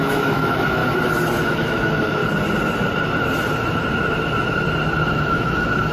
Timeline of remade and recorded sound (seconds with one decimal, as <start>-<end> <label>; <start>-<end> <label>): 0.0-0.8 remade; 0.8-1.4 recorded; 1.4-2.2 remade; 2.2-5.1 recorded; 5.1-5.9 remade